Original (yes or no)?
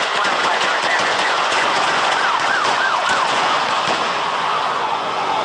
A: no